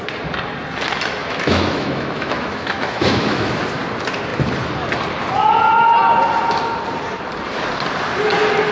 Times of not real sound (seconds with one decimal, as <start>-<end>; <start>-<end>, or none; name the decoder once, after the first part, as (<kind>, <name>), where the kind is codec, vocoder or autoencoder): 1.2-3.6 (autoencoder, DAC-VAE)